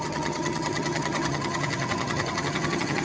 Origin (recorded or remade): remade